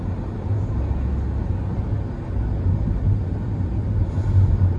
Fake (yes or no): no